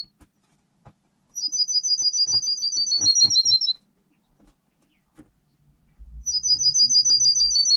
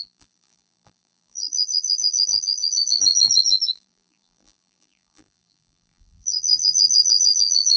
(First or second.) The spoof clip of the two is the second